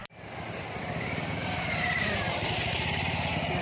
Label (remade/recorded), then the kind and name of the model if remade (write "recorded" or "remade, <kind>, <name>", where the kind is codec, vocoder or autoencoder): remade, vocoder, BigVGAN v2